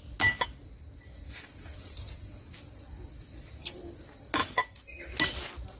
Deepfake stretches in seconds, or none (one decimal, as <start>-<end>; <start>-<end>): 1.5-2.5